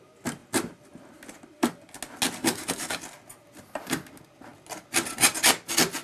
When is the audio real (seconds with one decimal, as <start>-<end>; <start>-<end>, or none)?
0.0-2.4; 3.0-6.0